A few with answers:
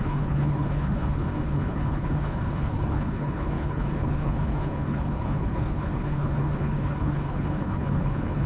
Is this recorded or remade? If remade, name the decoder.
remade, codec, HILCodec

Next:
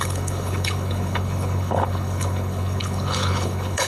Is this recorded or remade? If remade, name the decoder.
remade, codec, HILCodec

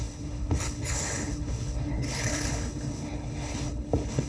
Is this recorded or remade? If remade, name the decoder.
remade, codec, HILCodec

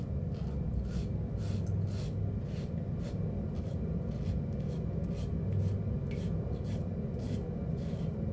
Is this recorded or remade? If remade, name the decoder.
recorded